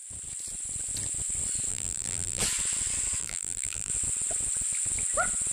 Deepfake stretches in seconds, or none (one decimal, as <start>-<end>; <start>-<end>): 1.7-2.4; 3.2-3.9